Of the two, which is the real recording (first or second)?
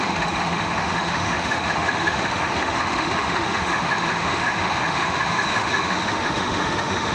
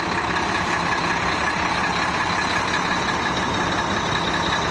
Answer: second